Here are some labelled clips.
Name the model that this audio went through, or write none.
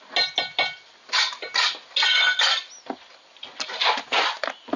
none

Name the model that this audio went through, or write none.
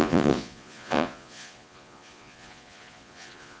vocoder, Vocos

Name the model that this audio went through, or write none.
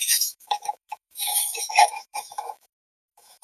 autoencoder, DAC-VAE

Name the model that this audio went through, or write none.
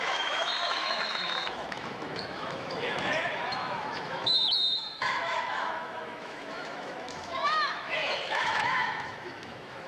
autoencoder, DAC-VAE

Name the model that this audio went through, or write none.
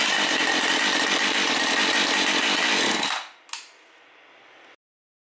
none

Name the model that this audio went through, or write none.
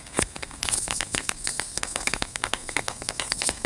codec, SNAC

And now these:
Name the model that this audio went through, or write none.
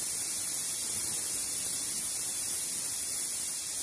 none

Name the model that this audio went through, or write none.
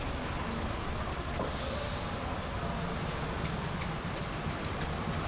none